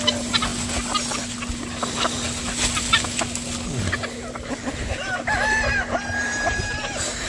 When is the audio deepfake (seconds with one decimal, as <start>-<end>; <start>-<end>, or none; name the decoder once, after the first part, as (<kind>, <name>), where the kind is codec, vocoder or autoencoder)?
6.2-7.3 (vocoder, BigVGAN v2)